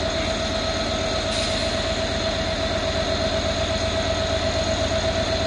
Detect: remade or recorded recorded